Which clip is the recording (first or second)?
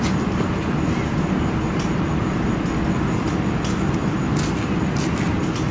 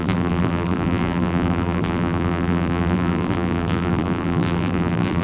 first